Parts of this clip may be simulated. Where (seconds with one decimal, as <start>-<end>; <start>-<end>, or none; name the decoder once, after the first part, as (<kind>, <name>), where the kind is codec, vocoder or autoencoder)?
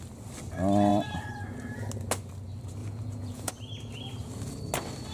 2.8-3.5 (vocoder, Vocos)